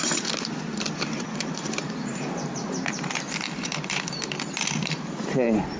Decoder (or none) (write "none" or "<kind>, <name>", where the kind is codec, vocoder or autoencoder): vocoder, BigVGAN v2